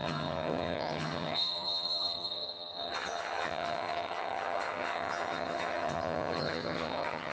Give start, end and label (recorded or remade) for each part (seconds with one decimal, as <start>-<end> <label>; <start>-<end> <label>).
0.0-7.3 remade